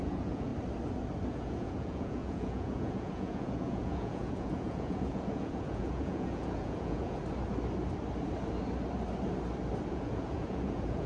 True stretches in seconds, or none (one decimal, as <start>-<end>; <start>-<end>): 0.5-1.3; 7.2-9.9